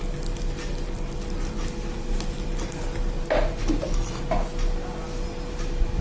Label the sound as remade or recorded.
recorded